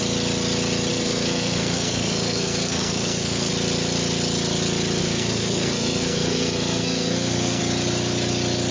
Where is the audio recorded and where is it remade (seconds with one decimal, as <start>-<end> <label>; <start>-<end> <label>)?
0.0-0.9 recorded; 0.9-3.5 remade; 3.5-5.0 recorded; 5.0-7.6 remade; 7.6-8.7 recorded